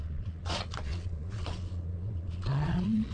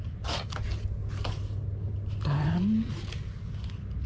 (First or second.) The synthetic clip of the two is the first